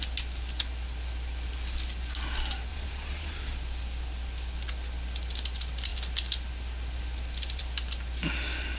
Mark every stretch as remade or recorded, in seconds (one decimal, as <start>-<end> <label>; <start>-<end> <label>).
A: 0.0-2.7 recorded; 2.7-3.6 remade; 3.6-8.8 recorded